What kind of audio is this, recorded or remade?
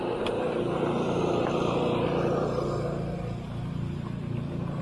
recorded